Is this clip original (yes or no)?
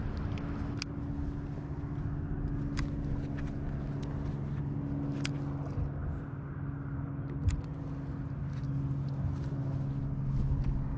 yes